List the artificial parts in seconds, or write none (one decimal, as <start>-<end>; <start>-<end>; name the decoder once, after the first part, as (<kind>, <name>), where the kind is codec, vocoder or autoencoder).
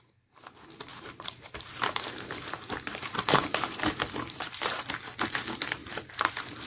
0.9-4.9 (vocoder, BigVGAN v2); 5.8-6.7